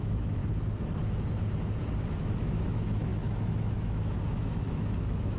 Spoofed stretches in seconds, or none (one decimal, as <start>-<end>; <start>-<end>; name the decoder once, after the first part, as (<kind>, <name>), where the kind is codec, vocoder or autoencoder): 0.0-0.4 (autoencoder, DAC-VAE); 2.2-5.4